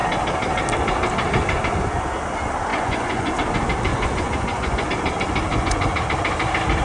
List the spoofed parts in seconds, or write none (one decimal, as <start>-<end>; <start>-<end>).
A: 2.7-3.3; 3.9-4.9; 5.5-6.0